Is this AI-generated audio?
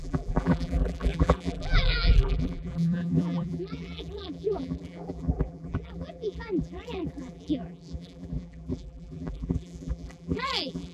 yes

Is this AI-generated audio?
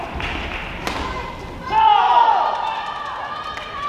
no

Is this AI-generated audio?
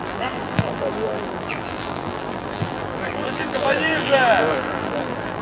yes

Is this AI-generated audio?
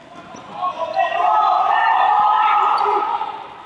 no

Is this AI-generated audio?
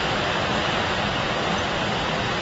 no